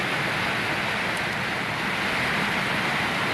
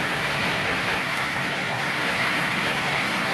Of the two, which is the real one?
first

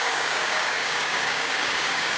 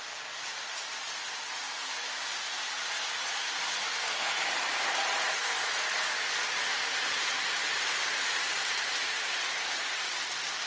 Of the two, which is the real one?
second